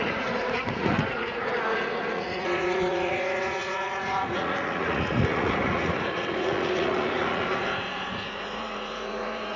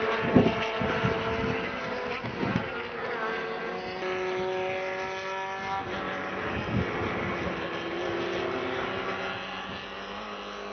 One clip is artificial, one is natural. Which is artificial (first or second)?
first